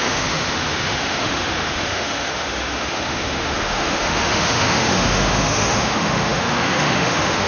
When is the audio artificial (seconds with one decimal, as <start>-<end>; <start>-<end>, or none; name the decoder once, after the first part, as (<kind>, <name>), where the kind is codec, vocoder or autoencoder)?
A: 0.0-7.5 (autoencoder, DAC-VAE)